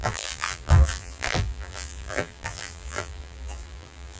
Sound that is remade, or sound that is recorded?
remade